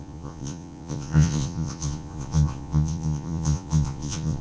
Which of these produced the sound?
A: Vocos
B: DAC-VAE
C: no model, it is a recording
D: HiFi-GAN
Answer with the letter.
A